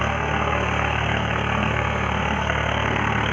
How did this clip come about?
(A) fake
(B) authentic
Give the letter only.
A